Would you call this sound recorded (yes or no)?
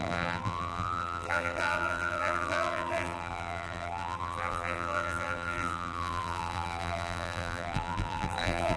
no